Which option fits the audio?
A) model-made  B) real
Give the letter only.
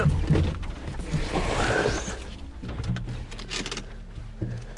B